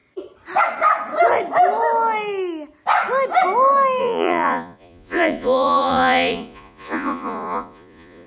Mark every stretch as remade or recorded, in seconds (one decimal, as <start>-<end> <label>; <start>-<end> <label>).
0.0-4.0 recorded; 4.0-8.3 remade